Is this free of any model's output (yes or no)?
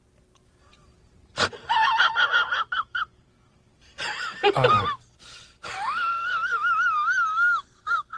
yes